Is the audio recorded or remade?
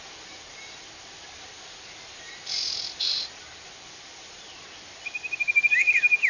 remade